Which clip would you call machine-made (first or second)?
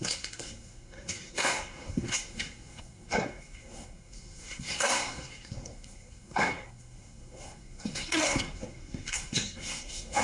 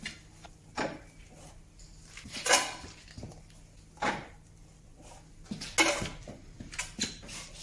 first